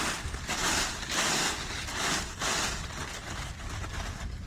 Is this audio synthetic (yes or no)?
no